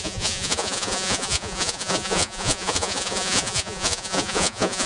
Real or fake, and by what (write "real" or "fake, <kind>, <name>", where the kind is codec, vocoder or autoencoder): fake, vocoder, Vocos